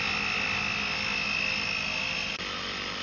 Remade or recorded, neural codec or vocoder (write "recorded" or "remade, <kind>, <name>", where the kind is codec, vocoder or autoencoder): recorded